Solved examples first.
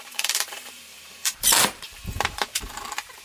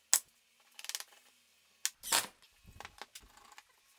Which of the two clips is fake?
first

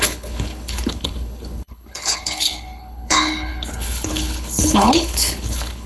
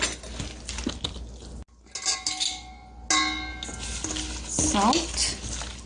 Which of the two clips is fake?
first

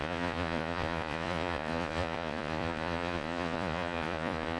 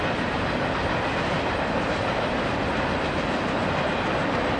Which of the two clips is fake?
first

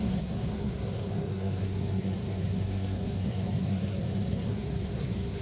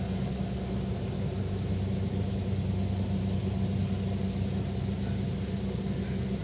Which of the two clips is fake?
first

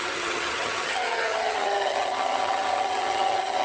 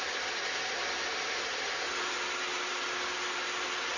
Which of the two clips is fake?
first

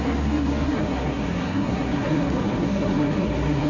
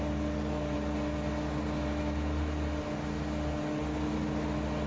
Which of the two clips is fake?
first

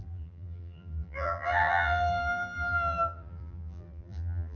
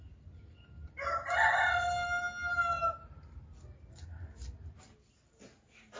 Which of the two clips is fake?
first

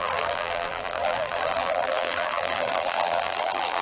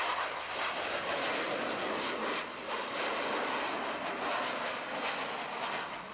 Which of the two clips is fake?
first